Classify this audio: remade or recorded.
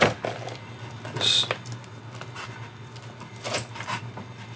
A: recorded